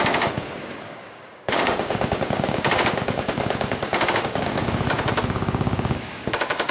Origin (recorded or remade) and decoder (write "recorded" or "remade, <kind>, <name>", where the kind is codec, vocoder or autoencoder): remade, codec, DAC